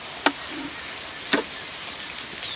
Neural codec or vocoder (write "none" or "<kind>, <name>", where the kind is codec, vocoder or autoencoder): none